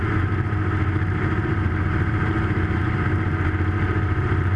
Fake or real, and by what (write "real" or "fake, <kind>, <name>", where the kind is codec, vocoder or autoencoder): fake, vocoder, BigVGAN v2